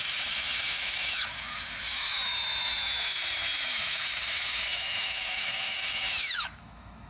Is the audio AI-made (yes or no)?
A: yes